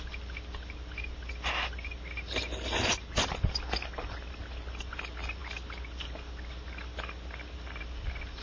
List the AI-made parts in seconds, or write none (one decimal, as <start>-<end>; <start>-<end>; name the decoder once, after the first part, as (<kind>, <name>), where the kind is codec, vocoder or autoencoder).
none